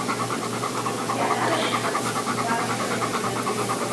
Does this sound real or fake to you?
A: real